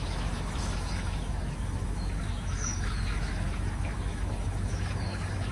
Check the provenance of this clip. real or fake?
fake